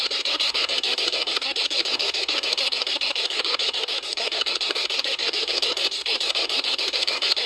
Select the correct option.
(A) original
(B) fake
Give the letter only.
B